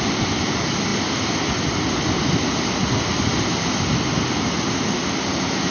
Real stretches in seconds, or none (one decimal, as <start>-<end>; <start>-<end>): 0.0-5.7